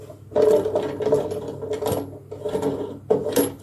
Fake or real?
real